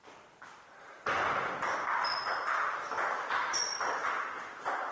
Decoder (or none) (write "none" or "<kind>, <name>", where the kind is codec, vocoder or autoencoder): none